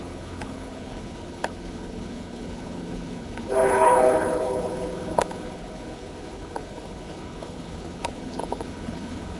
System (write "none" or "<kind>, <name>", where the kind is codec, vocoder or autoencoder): codec, HILCodec